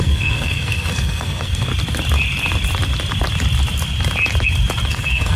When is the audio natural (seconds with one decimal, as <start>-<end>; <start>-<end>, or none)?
1.7-4.9